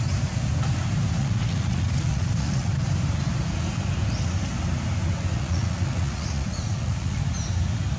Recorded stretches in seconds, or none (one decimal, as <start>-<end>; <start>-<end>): 0.0-1.2; 2.7-5.3; 7.2-8.0